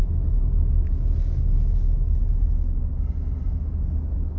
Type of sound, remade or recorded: recorded